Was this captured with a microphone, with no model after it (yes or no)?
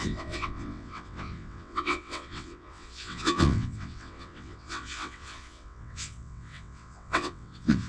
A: no